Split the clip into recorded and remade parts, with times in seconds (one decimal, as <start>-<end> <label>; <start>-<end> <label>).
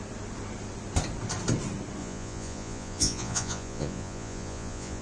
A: 0.0-2.0 recorded; 2.0-5.0 remade